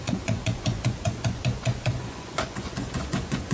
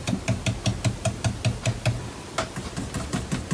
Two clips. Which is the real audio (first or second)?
second